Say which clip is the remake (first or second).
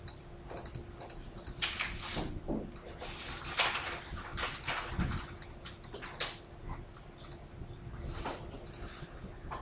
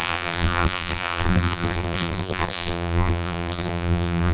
second